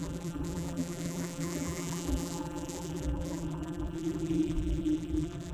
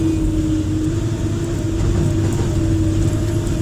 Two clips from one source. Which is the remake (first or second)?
first